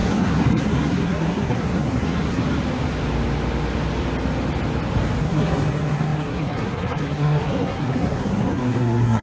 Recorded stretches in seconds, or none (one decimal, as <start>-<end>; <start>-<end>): 2.4-5.2